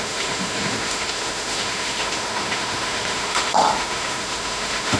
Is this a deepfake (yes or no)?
yes